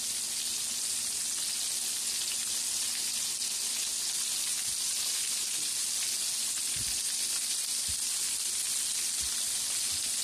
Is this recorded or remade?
recorded